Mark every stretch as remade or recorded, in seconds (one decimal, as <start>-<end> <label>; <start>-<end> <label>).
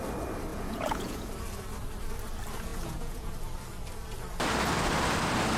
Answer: 0.0-0.5 recorded; 0.5-1.3 remade; 1.3-2.7 recorded; 2.7-3.3 remade; 3.3-5.6 recorded